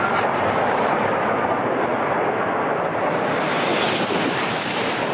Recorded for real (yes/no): yes